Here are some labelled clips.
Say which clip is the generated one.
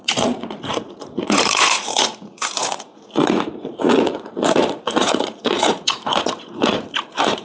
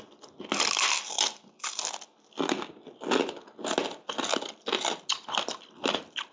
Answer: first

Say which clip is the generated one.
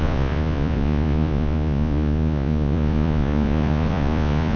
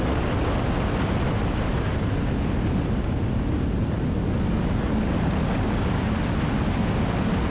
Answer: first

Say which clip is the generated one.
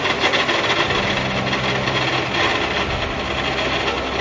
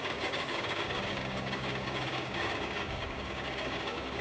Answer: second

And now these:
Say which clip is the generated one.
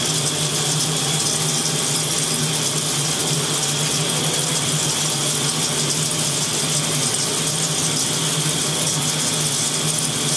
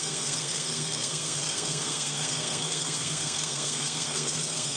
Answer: second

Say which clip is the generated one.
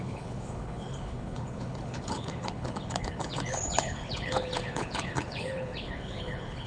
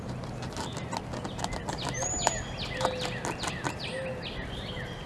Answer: first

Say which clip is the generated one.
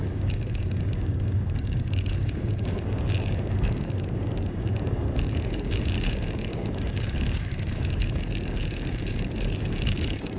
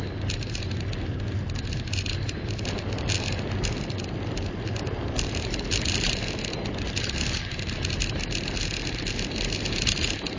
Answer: first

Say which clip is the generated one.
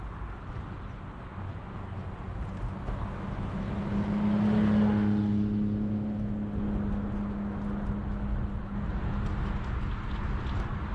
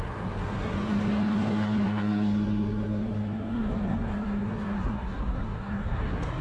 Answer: second